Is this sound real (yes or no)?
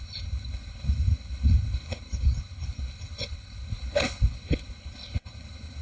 no